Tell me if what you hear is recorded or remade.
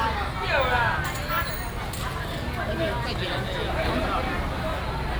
recorded